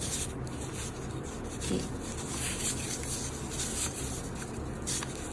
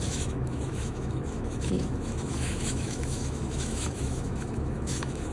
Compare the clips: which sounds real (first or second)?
first